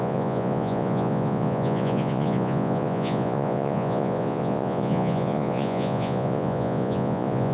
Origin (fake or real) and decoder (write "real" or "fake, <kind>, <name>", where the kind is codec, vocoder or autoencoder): fake, vocoder, Vocos